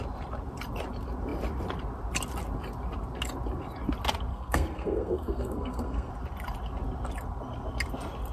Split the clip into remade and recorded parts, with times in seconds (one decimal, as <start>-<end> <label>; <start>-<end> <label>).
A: 0.0-4.3 recorded; 4.3-6.1 remade; 6.1-8.3 recorded

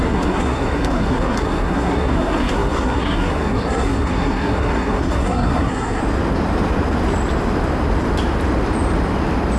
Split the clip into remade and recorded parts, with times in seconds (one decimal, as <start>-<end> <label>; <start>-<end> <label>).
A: 0.0-6.0 remade; 6.0-9.6 recorded